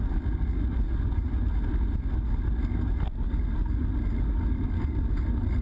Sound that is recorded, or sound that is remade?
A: recorded